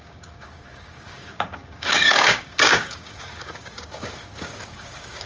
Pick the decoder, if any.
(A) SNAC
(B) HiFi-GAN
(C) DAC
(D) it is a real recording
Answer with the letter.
C